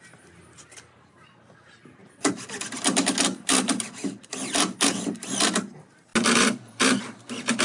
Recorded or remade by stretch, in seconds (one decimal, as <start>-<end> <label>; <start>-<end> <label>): 0.0-7.6 recorded